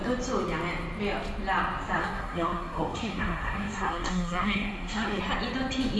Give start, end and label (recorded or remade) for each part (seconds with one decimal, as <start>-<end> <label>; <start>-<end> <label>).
0.0-2.0 recorded; 2.0-5.2 remade; 5.2-6.0 recorded

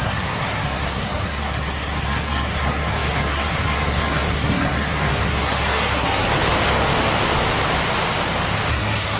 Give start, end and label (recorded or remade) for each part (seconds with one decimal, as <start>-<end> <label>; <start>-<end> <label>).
0.0-6.3 remade; 6.3-8.7 recorded; 8.7-9.2 remade

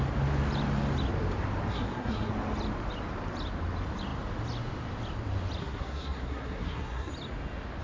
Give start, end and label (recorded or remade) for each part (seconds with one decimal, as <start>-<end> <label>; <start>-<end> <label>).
0.0-1.7 recorded; 1.7-2.3 remade; 2.3-5.6 recorded; 5.6-7.1 remade; 7.1-7.8 recorded